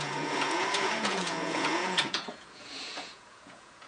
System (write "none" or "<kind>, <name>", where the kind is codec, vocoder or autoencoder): vocoder, Vocos